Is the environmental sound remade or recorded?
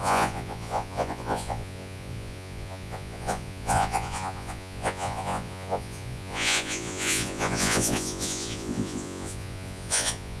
remade